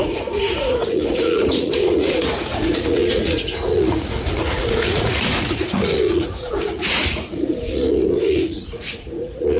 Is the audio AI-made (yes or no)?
yes